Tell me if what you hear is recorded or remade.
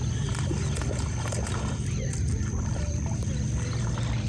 recorded